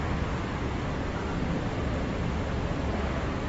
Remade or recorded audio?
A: recorded